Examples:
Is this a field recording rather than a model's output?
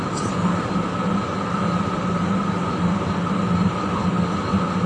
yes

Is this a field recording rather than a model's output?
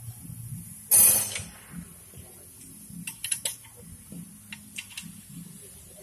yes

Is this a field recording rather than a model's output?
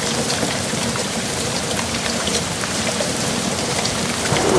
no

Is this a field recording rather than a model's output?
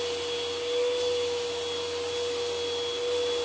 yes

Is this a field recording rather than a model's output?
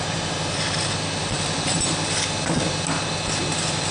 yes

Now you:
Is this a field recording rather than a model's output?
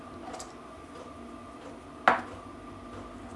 yes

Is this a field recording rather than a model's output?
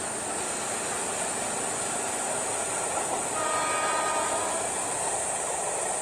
yes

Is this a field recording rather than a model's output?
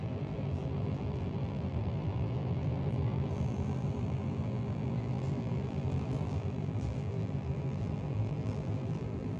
no